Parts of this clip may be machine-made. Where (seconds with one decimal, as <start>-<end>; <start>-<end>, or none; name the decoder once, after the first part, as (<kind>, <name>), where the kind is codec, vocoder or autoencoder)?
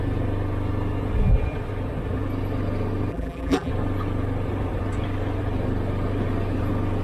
3.1-3.7 (vocoder, BigVGAN v2)